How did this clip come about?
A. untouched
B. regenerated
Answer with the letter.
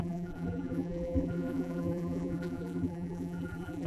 B